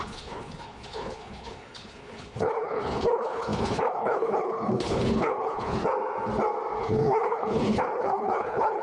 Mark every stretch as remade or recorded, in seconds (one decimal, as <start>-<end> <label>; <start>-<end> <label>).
0.0-5.8 remade; 5.8-6.8 recorded; 6.8-8.8 remade